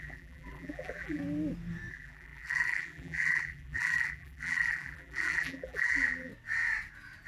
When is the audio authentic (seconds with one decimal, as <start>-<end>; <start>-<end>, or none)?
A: 1.2-1.9; 6.3-7.3